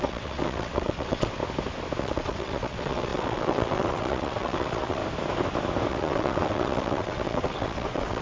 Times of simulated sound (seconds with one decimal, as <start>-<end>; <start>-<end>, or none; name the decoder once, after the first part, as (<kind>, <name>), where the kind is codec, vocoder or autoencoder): 0.0-1.4 (vocoder, WaveNeXt); 2.0-5.0; 5.9-8.2